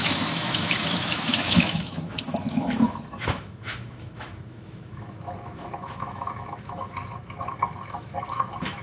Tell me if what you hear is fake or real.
fake